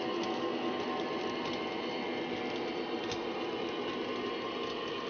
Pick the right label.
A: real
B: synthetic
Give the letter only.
A